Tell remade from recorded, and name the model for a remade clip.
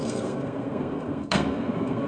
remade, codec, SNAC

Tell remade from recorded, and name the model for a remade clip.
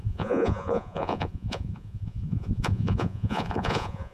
remade, vocoder, Vocos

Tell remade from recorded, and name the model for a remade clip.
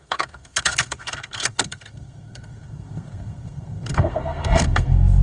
remade, codec, SNAC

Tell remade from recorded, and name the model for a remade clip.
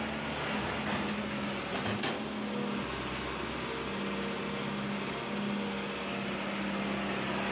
recorded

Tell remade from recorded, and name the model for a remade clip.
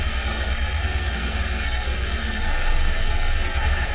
remade, codec, SNAC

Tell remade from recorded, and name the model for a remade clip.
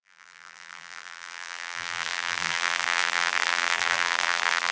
remade, vocoder, BigVGAN v2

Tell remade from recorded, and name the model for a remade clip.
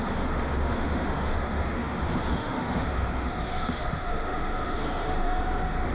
remade, autoencoder, DAC-VAE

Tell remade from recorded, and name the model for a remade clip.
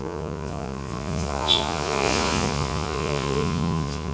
remade, vocoder, Vocos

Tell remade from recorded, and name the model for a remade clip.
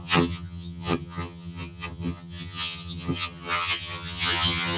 remade, vocoder, HiFi-GAN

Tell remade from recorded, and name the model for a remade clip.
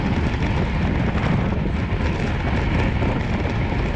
recorded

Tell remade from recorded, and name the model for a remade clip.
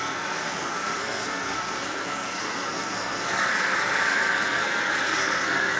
remade, codec, SNAC